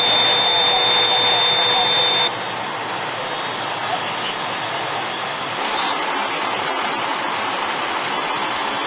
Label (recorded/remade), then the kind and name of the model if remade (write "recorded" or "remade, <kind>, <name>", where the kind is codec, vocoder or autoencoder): recorded